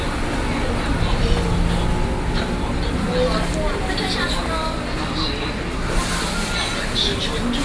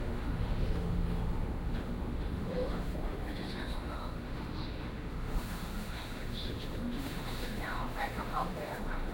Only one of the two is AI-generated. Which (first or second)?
second